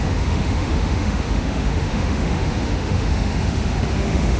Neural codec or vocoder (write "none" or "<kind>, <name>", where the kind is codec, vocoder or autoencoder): autoencoder, DAC-VAE